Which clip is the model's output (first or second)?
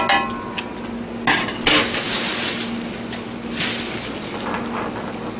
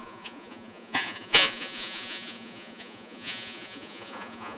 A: second